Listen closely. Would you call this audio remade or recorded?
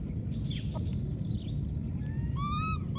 recorded